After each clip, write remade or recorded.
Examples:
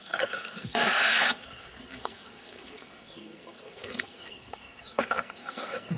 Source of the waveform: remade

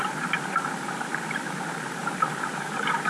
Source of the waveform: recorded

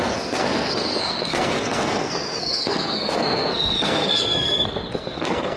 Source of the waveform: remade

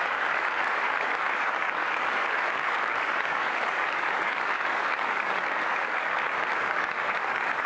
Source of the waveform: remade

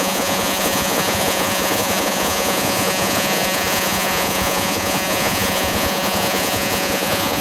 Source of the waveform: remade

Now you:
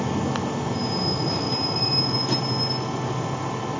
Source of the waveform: recorded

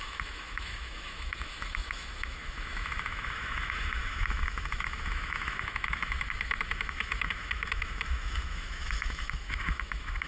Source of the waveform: remade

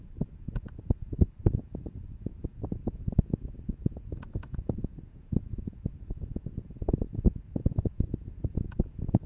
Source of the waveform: remade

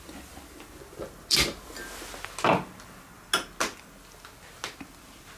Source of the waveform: recorded